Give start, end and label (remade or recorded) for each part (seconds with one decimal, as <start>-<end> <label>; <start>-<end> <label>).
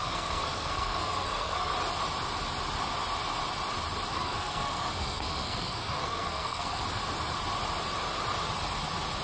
0.0-1.7 remade; 1.7-4.1 recorded; 4.1-6.8 remade; 6.8-9.2 recorded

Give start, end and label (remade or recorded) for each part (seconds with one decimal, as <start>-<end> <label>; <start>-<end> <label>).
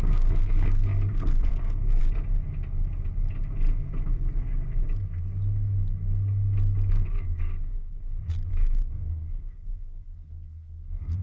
0.0-2.0 remade; 2.0-6.9 recorded; 6.9-7.9 remade; 7.9-8.5 recorded; 8.5-11.2 remade